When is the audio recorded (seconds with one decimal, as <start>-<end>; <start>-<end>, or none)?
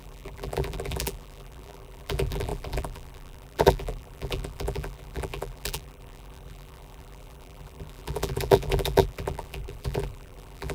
none